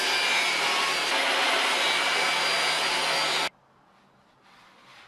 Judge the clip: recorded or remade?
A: recorded